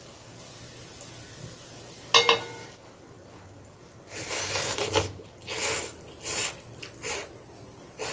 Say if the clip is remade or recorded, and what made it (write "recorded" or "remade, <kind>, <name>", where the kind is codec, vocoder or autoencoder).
recorded